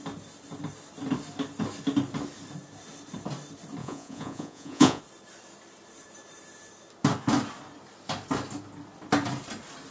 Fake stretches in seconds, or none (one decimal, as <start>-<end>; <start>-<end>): 3.8-5.0

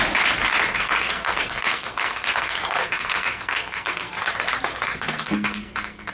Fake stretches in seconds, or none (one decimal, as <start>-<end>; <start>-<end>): 0.6-4.3; 4.7-6.1

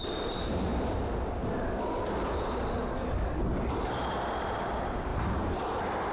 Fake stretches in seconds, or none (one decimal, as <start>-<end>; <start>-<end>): 0.0-0.7; 4.4-5.1

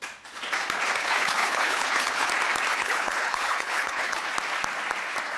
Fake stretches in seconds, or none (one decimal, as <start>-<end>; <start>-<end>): 1.0-2.3; 2.7-4.3

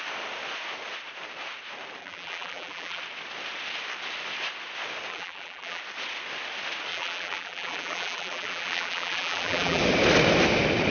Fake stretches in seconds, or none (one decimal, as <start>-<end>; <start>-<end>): 2.0-3.0; 5.1-5.8; 6.9-9.8